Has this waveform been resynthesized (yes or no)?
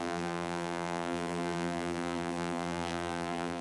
yes